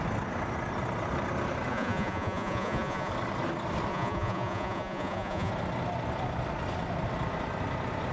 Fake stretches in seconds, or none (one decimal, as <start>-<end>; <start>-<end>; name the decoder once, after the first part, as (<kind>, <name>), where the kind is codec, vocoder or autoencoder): 1.7-3.1 (vocoder, Vocos); 3.9-5.5